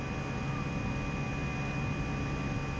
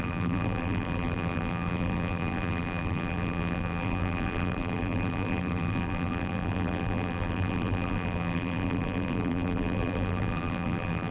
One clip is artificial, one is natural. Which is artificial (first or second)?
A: second